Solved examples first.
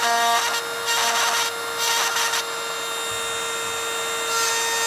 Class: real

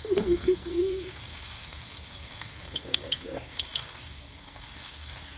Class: fake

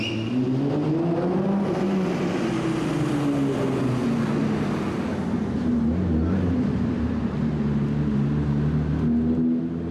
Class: real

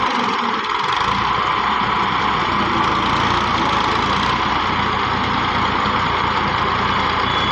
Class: real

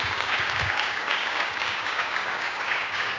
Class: fake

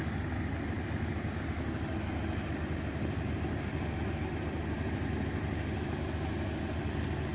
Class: real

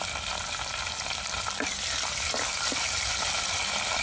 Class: real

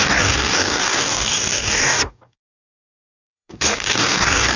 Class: fake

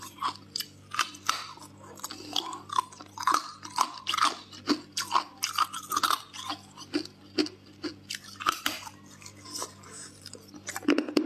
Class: real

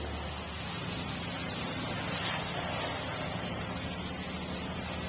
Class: real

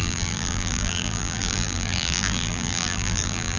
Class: fake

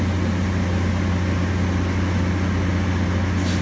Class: real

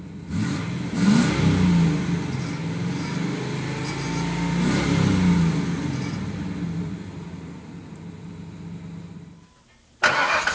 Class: real